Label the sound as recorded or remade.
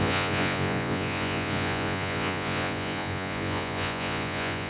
remade